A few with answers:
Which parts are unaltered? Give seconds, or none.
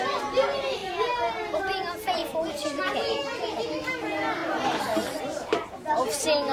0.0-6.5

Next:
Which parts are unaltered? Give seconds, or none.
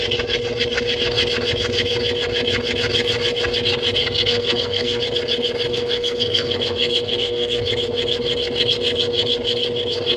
0.0-4.0; 5.0-5.7; 7.6-10.2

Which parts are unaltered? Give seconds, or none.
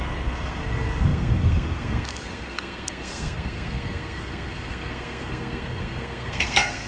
none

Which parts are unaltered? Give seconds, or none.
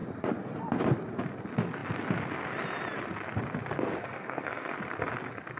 0.0-4.0; 4.7-5.6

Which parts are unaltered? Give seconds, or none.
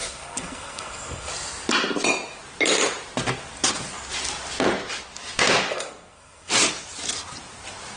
1.3-5.7; 6.5-8.0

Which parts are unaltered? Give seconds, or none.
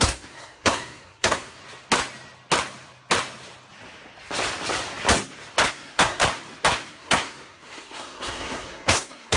1.6-5.7; 6.2-6.9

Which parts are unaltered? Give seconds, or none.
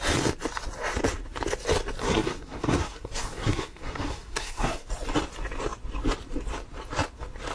0.0-2.0; 4.9-7.5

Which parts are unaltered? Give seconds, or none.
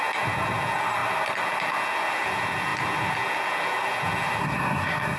0.0-4.4